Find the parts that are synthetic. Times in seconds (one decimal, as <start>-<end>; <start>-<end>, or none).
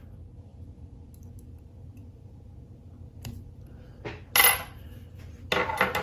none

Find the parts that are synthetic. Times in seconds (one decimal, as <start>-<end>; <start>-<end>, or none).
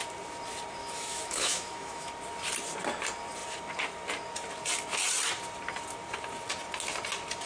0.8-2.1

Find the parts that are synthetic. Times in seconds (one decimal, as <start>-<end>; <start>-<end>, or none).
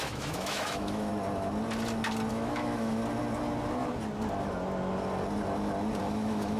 0.0-1.1; 2.3-3.0; 6.0-6.6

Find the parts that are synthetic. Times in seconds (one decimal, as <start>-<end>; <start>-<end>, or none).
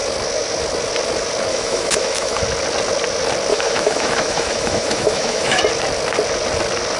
1.5-2.4; 3.5-5.6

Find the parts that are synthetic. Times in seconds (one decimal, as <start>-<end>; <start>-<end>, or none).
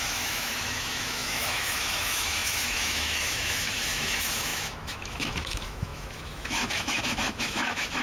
0.0-8.0